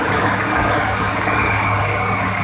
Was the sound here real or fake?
fake